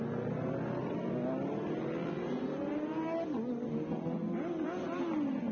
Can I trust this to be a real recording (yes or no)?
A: yes